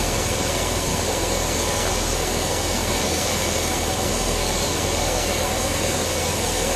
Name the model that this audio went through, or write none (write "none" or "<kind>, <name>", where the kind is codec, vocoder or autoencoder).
codec, SNAC